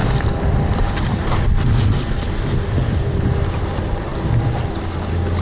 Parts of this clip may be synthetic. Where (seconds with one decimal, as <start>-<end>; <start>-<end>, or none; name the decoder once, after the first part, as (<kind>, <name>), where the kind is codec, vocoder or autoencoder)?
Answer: none